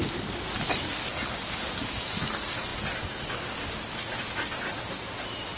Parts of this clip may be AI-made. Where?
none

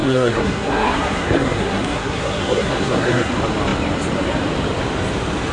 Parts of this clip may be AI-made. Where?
0.0-3.3

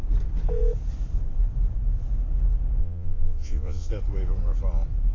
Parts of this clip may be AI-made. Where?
2.8-3.9

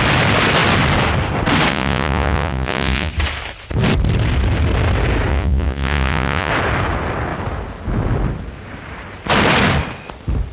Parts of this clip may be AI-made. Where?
1.7-3.1; 5.3-6.5

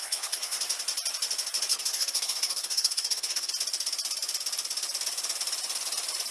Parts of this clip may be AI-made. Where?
0.0-0.6; 1.7-3.5

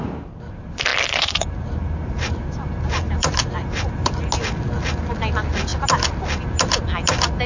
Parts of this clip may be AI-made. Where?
0.9-4.3